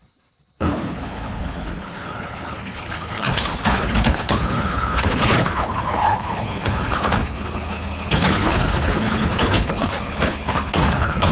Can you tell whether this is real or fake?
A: fake